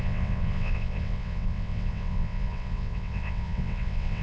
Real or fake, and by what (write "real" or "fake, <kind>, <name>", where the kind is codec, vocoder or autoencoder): fake, vocoder, WaveNeXt